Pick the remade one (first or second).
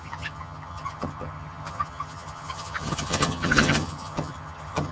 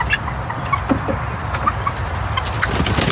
first